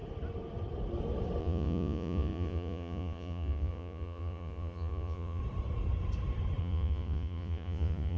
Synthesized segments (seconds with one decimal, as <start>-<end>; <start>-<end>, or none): 1.4-5.4; 6.6-8.2